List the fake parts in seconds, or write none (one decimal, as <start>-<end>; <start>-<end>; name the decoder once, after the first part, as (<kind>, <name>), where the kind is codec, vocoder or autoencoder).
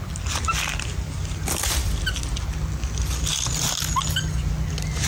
none